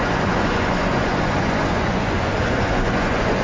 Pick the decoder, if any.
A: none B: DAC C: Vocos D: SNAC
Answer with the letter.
C